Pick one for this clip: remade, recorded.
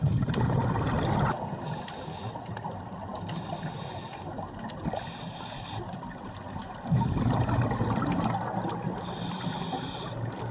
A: recorded